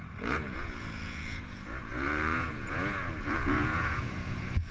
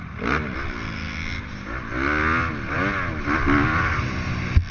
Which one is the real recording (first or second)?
second